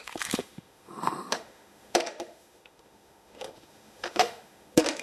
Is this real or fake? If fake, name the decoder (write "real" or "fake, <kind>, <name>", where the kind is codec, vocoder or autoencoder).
fake, autoencoder, DAC-VAE